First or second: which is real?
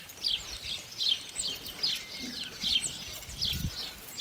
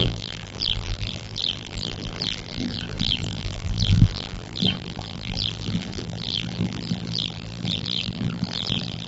first